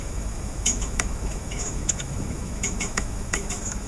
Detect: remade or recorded remade